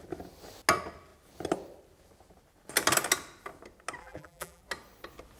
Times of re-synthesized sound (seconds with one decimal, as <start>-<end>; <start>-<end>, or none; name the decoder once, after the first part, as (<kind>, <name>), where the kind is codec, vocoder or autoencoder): 4.0-4.6 (vocoder, BigVGAN v2)